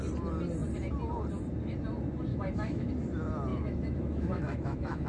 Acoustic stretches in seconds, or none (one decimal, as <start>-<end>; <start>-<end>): 0.0-2.3; 2.9-3.5